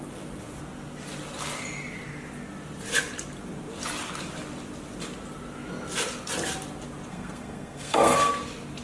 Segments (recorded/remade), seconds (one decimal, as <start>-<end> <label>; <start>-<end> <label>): 0.0-7.1 recorded; 7.1-8.3 remade; 8.3-8.8 recorded